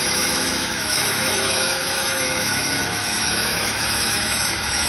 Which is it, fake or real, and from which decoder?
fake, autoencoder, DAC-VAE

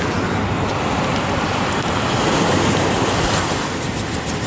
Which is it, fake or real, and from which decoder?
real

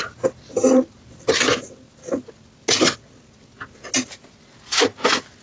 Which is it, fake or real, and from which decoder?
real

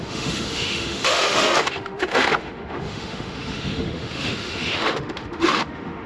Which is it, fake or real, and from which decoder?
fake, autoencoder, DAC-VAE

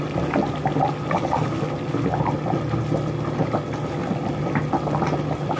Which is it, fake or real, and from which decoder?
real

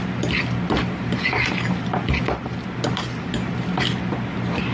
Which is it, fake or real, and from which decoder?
real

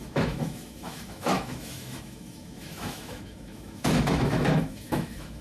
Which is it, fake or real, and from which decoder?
fake, autoencoder, DAC-VAE